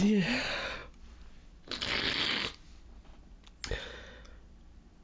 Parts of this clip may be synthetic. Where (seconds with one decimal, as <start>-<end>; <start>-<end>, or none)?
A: none

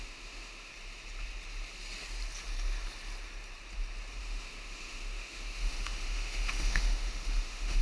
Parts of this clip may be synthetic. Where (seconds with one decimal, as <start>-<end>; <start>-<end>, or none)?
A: 0.0-0.7; 4.2-7.8

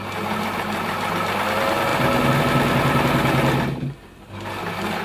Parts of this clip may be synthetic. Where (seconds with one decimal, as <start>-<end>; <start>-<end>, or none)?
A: none

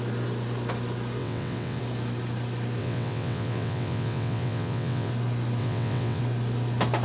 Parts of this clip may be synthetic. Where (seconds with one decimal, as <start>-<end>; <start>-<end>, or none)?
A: 1.2-1.8; 2.8-5.1; 5.6-6.2

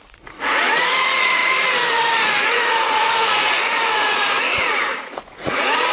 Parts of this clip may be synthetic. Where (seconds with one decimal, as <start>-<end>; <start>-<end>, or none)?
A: 0.0-5.9